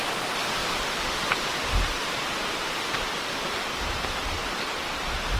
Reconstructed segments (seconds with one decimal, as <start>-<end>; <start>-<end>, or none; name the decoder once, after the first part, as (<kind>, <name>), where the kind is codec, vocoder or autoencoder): 0.0-5.4 (vocoder, BigVGAN v2)

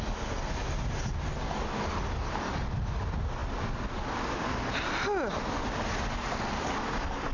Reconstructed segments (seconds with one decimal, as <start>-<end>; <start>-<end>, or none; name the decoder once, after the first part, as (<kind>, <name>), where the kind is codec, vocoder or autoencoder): none

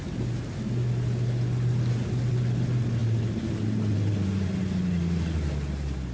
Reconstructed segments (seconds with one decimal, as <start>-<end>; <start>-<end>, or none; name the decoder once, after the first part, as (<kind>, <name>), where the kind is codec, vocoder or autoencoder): none

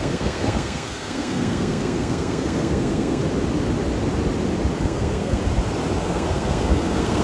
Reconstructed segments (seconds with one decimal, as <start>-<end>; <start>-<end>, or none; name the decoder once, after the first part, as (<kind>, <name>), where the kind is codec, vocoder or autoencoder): 0.0-3.2 (codec, SNAC); 4.8-5.4; 6.0-7.2

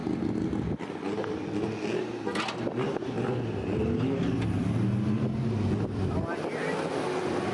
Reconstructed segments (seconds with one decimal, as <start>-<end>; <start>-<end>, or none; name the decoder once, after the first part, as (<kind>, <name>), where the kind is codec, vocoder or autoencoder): none

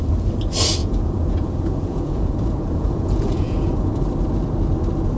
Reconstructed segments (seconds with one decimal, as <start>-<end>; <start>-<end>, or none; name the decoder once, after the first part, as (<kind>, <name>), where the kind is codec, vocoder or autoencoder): 0.8-3.9 (vocoder, Vocos)

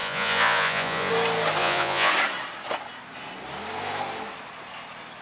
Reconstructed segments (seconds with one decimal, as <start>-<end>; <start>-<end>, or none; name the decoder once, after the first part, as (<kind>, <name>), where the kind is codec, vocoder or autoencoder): 0.0-1.1 (vocoder, Vocos); 1.6-2.1